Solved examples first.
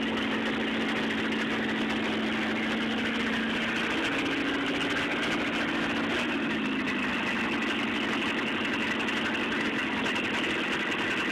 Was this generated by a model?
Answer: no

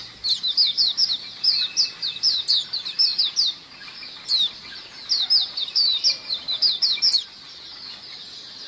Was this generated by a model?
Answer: no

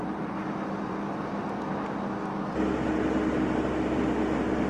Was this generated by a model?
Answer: no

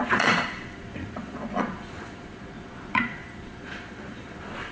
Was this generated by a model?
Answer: yes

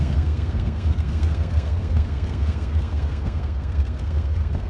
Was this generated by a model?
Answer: yes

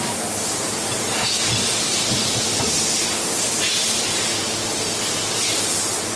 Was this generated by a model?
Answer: no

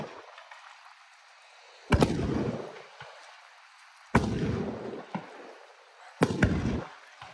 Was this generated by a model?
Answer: no